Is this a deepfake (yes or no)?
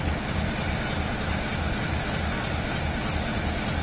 no